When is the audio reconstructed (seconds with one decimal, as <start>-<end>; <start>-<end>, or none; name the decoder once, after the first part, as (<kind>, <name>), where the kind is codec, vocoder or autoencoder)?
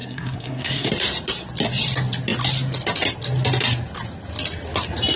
0.0-0.9 (codec, SNAC)